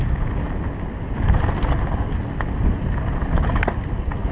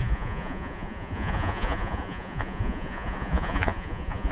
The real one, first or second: first